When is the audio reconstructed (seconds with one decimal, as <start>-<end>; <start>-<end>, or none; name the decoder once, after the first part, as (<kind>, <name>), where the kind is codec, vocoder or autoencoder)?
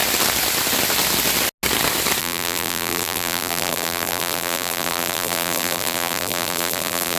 2.2-7.2 (vocoder, BigVGAN v2)